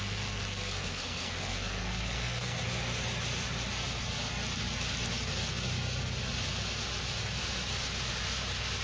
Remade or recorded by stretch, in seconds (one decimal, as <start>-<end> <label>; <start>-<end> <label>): 0.0-2.6 remade; 2.6-8.8 recorded